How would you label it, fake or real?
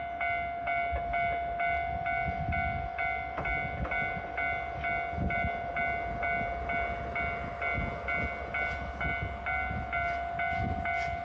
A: real